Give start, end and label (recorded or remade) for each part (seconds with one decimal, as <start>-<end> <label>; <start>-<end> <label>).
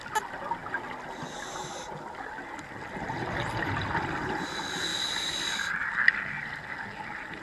0.0-7.4 recorded